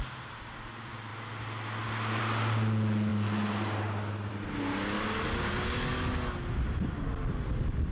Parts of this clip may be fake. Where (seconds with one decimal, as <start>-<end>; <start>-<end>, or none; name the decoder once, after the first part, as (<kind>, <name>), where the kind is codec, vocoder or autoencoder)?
none